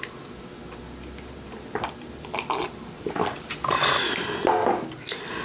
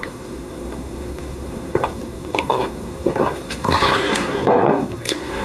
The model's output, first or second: second